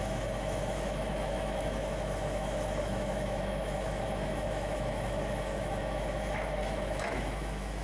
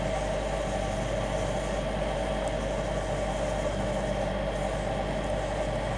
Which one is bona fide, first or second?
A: second